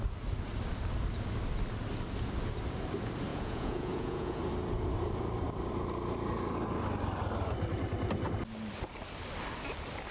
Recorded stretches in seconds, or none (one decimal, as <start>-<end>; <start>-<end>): 0.0-3.3; 4.4-10.1